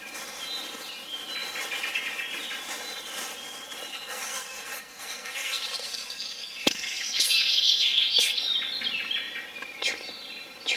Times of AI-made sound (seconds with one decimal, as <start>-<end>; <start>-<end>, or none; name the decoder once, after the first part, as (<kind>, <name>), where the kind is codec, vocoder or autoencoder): 3.9-8.4 (codec, SNAC)